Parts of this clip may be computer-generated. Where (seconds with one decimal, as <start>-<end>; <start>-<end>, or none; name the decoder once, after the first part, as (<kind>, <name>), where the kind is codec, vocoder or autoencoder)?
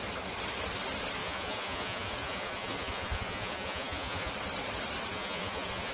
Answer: 1.2-4.3 (vocoder, Vocos); 5.1-5.9